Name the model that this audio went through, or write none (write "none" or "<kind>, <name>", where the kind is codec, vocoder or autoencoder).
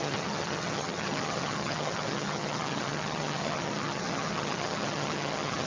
vocoder, HiFi-GAN